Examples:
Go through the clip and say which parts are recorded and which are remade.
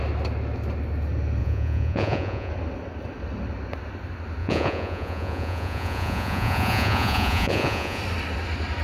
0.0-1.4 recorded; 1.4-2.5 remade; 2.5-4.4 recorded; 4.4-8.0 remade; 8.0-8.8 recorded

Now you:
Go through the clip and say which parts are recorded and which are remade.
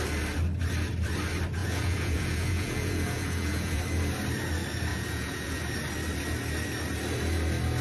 0.0-1.6 recorded; 1.6-3.8 remade; 3.8-4.9 recorded; 4.9-5.6 remade; 5.6-7.8 recorded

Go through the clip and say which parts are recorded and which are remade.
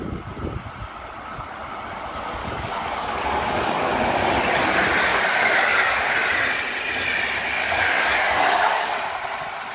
0.0-2.4 recorded; 2.4-3.9 remade; 3.9-5.1 recorded; 5.1-6.1 remade; 6.1-7.6 recorded; 7.6-9.0 remade; 9.0-9.7 recorded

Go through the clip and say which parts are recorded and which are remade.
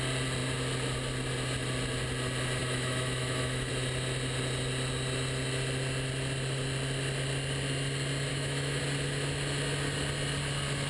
0.0-2.6 recorded; 2.6-3.7 remade; 3.7-8.3 recorded; 8.3-8.8 remade; 8.8-10.9 recorded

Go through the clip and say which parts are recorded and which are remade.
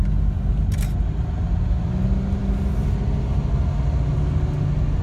0.0-5.0 recorded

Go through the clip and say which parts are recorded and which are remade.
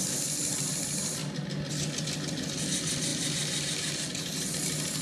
0.0-5.0 recorded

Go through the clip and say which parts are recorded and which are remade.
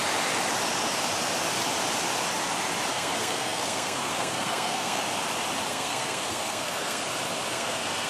0.0-2.9 recorded; 2.9-5.0 remade; 5.0-5.7 recorded; 5.7-7.0 remade; 7.0-7.5 recorded; 7.5-8.1 remade